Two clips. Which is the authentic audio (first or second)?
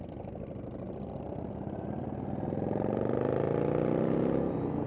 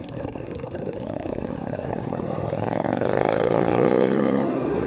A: first